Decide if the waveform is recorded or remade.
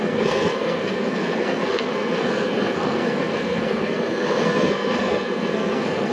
remade